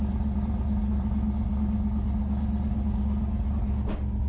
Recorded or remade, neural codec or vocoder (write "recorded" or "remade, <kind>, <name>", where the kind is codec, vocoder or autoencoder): recorded